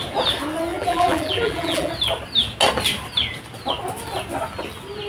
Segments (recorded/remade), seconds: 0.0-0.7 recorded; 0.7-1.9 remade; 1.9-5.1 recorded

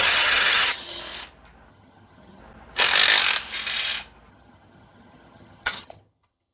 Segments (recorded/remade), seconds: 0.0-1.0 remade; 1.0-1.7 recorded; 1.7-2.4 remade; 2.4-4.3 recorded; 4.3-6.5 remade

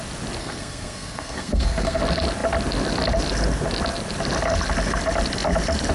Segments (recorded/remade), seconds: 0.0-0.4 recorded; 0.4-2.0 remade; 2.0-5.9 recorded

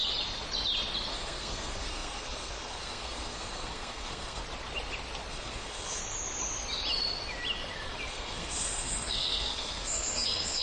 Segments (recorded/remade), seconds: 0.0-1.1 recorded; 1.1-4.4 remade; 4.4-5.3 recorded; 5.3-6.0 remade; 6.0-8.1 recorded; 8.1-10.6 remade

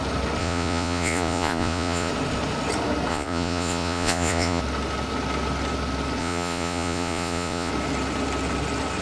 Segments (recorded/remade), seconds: 0.0-0.4 recorded; 0.4-2.1 remade; 2.1-3.1 recorded; 3.1-4.6 remade; 4.6-6.2 recorded; 6.2-7.7 remade; 7.7-9.0 recorded